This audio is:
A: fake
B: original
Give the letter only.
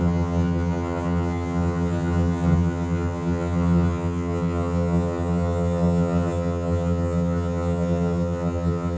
A